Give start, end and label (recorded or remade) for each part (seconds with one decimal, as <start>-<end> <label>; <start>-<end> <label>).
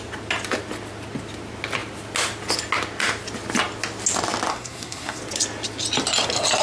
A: 0.0-4.5 recorded; 4.5-5.2 remade; 5.2-6.6 recorded